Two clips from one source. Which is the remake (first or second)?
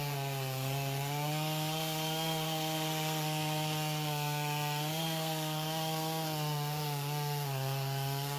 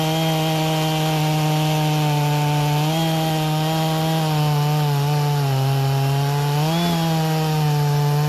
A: first